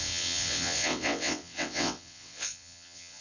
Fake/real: fake